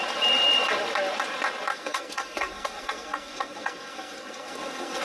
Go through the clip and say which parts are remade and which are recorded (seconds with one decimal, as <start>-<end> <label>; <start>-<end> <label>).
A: 0.0-1.7 recorded; 1.7-5.0 remade